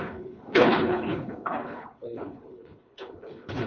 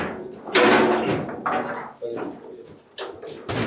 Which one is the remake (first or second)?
first